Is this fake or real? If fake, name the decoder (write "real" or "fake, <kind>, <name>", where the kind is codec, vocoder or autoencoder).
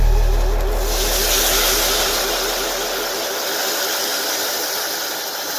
real